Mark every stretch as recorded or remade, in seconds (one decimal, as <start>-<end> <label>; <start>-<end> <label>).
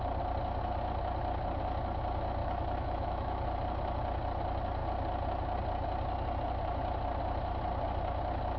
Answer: 0.0-2.4 recorded; 2.4-3.6 remade; 3.6-8.6 recorded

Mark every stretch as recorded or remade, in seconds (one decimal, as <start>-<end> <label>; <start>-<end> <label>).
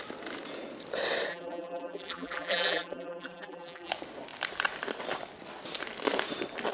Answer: 0.0-1.3 recorded; 1.3-3.9 remade; 3.9-6.7 recorded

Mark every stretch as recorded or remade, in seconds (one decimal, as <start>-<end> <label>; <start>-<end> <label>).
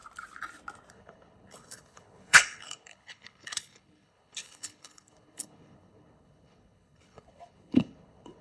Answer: 0.0-0.9 recorded; 0.9-8.4 remade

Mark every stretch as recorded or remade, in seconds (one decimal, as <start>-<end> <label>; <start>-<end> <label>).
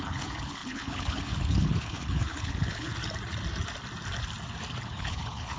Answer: 0.0-2.9 remade; 2.9-4.8 recorded; 4.8-5.6 remade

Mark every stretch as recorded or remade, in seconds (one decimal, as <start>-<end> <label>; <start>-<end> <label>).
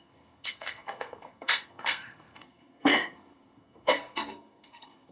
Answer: 0.0-5.1 remade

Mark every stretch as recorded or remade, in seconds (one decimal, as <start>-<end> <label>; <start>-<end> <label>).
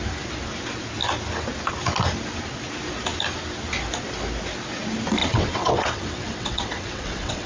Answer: 0.0-5.2 recorded; 5.2-7.5 remade